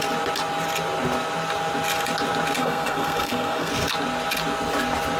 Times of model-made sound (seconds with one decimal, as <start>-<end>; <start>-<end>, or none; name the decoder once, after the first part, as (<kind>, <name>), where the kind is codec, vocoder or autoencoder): 2.6-3.7 (codec, SNAC)